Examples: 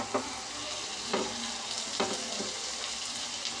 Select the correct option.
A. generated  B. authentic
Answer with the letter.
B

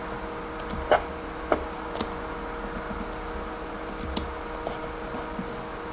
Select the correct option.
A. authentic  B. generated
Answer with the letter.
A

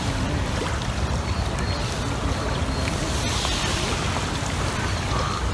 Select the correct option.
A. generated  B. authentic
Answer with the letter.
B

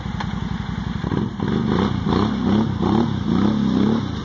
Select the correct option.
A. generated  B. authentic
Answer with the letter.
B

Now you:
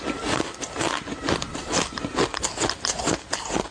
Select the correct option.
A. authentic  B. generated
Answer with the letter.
A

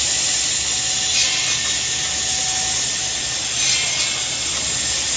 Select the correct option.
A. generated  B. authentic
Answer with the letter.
B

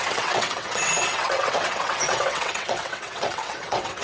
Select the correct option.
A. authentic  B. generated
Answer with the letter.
B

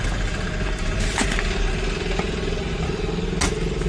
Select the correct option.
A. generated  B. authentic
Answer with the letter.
B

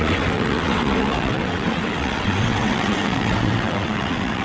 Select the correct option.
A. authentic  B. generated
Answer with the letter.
B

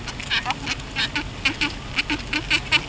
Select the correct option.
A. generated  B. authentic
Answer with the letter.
B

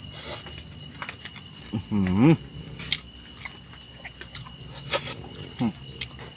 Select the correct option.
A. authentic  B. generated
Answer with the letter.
A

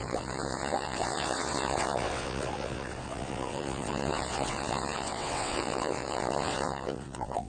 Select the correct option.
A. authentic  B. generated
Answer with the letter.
B